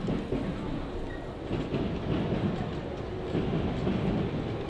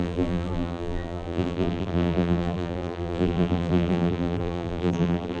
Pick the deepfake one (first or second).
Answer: second